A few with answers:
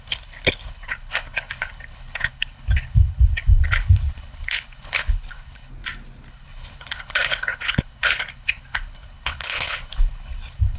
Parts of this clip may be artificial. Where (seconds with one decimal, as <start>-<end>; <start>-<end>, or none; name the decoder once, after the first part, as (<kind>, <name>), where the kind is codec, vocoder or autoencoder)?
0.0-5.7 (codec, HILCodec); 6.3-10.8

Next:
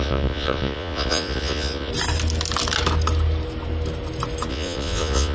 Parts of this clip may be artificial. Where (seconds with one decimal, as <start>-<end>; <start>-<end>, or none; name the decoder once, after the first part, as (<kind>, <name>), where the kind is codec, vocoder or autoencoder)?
0.0-1.9 (vocoder, Vocos); 4.5-5.3

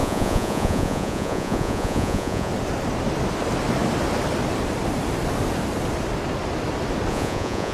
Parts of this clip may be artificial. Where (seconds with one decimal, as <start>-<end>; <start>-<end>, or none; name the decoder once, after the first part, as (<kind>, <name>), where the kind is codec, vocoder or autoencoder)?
0.0-2.5 (vocoder, Vocos); 7.1-7.7